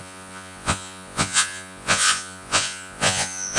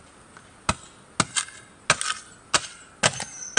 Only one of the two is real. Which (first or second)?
second